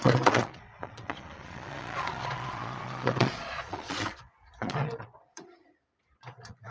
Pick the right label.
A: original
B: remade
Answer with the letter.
B